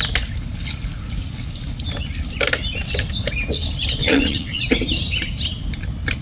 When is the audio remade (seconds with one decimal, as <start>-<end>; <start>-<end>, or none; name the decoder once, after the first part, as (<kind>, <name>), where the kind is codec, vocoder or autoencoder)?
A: 4.0-4.6 (vocoder, WaveNeXt)